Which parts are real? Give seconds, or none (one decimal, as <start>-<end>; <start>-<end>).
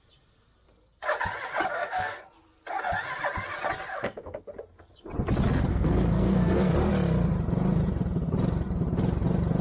0.0-1.7; 2.2-3.9; 4.5-5.7; 6.7-9.6